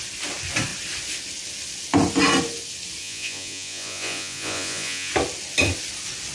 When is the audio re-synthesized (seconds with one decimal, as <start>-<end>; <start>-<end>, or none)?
3.0-5.1